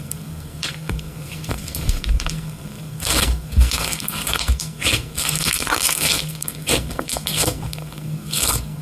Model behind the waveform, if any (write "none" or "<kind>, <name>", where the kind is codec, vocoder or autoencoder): codec, SNAC